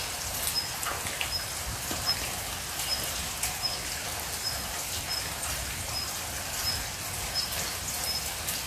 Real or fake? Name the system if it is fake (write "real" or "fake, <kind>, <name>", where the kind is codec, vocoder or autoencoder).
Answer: real